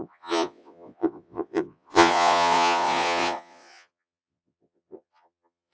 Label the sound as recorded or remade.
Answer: remade